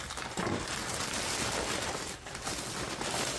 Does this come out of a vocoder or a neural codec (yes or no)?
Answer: no